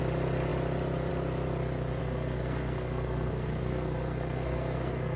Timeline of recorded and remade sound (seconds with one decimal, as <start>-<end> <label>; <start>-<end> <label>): 0.0-2.0 recorded; 2.0-5.2 remade